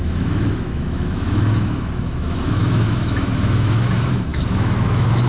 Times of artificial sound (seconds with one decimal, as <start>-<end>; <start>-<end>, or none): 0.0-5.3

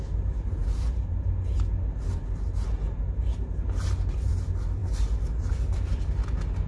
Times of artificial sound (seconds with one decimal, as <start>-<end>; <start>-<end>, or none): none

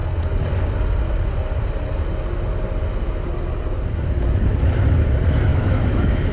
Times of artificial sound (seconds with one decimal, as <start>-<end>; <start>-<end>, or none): 5.5-6.3